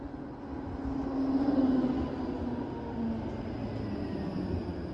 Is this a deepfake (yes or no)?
no